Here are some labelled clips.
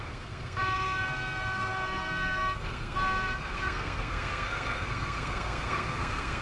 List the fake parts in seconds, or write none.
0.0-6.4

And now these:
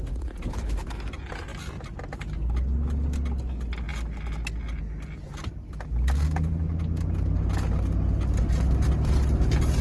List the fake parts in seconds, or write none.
none

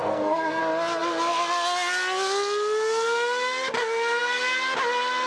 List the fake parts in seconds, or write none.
0.0-0.6

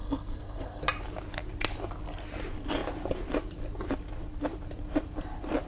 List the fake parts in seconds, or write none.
0.0-0.8

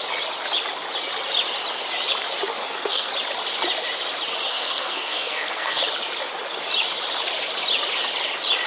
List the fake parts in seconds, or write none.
2.6-3.1; 4.5-5.8

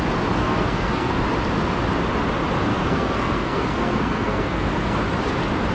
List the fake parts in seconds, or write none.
0.4-1.2; 2.7-5.0

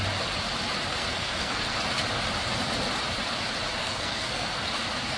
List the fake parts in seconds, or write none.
0.9-1.8; 3.8-4.6

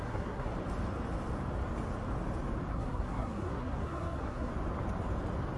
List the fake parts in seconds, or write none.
0.0-0.5; 2.7-4.5